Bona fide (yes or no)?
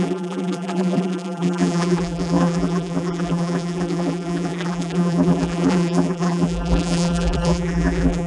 no